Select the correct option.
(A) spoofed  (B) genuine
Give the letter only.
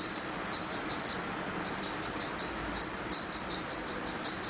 B